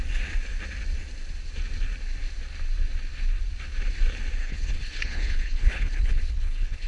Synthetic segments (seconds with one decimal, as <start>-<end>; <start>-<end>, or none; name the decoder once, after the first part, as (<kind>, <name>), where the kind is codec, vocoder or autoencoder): 4.4-6.9 (codec, HILCodec)